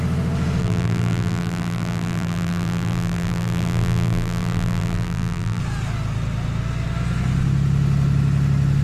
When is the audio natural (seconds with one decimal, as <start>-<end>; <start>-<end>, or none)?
0.0-0.6; 5.6-8.8